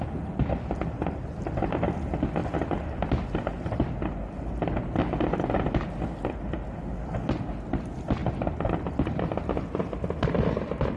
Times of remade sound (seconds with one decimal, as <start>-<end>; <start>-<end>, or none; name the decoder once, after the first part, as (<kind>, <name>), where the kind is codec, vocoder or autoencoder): none